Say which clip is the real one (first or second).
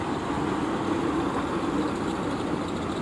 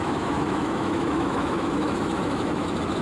first